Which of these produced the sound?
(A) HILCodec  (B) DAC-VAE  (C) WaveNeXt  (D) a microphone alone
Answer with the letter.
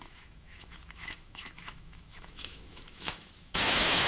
B